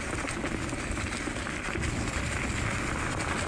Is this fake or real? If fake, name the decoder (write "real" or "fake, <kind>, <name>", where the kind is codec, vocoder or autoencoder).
real